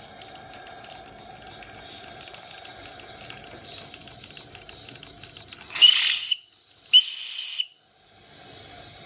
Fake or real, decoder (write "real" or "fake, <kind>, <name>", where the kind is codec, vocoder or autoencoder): real